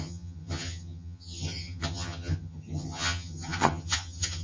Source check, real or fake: fake